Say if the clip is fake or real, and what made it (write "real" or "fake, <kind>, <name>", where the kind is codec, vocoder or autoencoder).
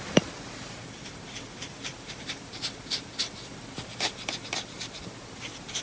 fake, vocoder, BigVGAN v2